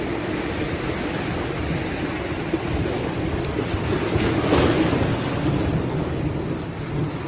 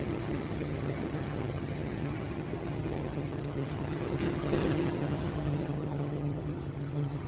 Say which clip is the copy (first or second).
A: second